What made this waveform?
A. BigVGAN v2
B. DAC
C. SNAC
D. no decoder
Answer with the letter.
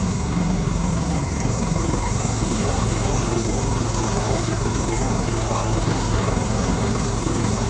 C